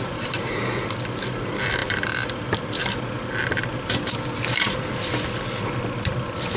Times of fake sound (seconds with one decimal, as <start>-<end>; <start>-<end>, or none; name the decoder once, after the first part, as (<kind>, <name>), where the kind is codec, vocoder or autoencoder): none

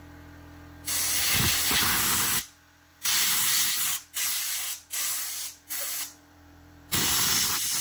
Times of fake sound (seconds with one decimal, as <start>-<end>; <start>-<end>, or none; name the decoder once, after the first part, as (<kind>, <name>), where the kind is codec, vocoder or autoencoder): 2.9-3.8 (vocoder, BigVGAN v2); 5.4-7.3

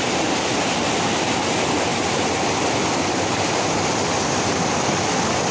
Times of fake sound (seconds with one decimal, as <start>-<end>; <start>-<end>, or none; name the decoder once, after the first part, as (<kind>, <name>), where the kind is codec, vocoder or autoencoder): none

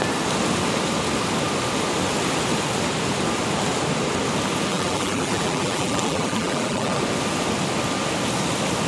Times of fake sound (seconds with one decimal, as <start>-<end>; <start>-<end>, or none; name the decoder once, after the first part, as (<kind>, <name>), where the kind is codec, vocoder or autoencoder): 4.7-7.0 (vocoder, BigVGAN v2)

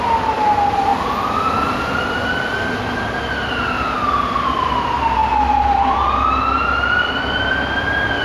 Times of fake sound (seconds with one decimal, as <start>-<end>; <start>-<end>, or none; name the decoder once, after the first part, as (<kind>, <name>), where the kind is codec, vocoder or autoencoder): none

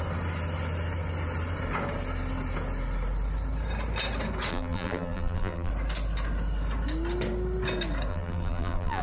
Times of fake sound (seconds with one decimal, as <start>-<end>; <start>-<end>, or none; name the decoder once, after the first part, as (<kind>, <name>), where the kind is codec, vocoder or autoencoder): 4.5-5.7 (vocoder, BigVGAN v2); 8.1-9.0

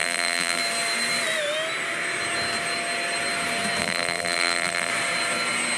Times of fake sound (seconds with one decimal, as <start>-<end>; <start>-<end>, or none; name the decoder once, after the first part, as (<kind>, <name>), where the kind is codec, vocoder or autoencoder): 0.0-0.6 (vocoder, BigVGAN v2); 3.8-4.9